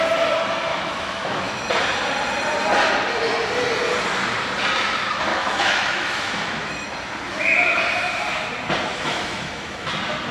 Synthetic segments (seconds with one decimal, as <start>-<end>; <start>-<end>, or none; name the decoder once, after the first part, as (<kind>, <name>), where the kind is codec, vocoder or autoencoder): 0.7-1.7 (autoencoder, DAC-VAE); 5.3-6.7; 8.9-9.9